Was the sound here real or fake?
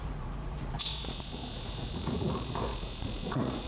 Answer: fake